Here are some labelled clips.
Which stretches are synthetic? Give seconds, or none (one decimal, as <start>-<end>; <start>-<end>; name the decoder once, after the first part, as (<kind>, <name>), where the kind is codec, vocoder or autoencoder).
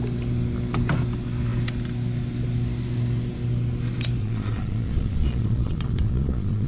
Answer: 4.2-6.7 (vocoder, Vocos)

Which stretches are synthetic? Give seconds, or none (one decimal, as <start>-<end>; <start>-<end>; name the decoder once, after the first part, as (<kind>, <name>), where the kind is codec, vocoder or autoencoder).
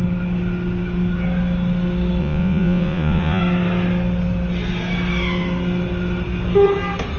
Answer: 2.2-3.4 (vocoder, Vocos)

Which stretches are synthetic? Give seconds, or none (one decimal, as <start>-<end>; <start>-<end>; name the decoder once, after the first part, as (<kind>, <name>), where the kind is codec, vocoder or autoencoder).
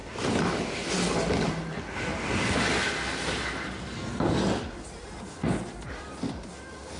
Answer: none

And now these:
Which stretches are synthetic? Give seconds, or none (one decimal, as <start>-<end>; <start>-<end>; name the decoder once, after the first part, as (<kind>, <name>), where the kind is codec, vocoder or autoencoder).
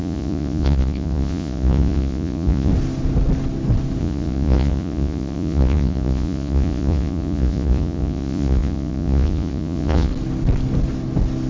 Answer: 0.0-2.7 (vocoder, Vocos); 4.0-10.1